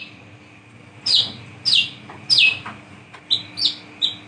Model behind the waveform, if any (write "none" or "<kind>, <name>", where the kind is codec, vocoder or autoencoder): none